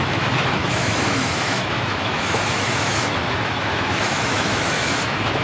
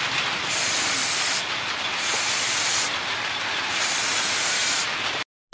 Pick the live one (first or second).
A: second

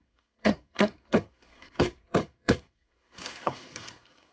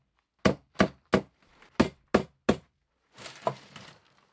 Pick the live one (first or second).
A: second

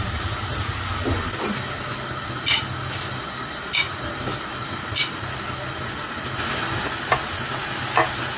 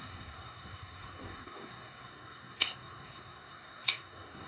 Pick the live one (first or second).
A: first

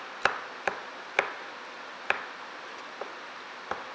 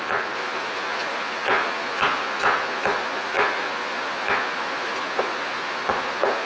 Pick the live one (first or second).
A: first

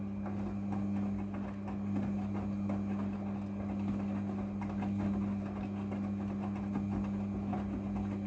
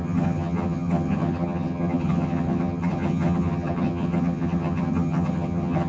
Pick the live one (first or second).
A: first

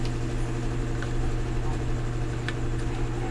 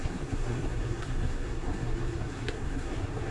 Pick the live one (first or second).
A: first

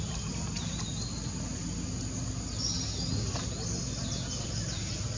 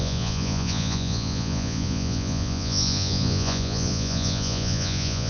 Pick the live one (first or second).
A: first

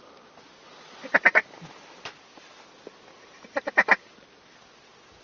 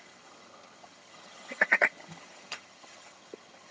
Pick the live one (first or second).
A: first